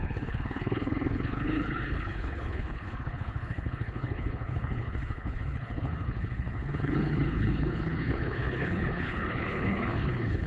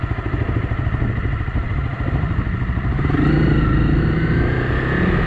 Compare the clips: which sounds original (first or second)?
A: second